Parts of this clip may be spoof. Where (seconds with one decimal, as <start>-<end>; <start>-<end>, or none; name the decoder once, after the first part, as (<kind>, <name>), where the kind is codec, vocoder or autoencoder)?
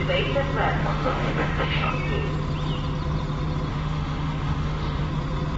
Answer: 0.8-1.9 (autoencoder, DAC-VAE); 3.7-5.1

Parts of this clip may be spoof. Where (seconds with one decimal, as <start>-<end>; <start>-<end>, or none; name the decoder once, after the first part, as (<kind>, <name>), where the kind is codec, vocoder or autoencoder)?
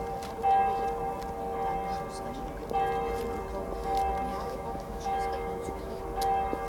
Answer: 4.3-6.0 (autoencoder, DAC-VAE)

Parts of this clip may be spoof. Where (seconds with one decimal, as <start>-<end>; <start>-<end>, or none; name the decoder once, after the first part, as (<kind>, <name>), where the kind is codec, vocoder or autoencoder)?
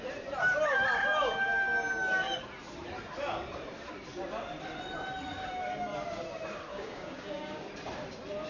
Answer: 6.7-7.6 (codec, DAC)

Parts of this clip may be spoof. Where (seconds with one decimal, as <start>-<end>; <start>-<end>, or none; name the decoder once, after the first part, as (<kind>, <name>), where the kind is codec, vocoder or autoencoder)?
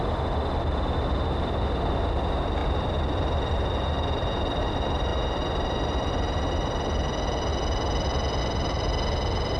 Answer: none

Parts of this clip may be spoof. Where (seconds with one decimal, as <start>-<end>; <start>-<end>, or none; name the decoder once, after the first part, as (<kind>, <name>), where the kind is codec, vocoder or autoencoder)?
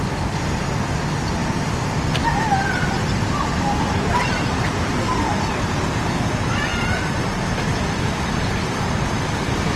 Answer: 1.4-5.5 (vocoder, BigVGAN v2); 6.7-9.8